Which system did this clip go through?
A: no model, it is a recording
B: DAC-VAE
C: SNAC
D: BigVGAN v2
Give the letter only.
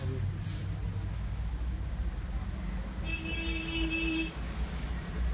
A